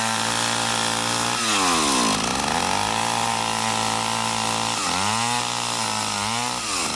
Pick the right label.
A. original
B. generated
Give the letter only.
A